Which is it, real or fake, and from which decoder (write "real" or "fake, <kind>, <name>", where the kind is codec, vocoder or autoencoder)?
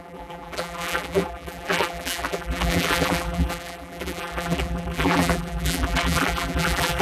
fake, vocoder, BigVGAN v2